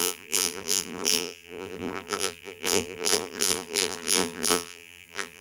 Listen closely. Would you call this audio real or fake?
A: fake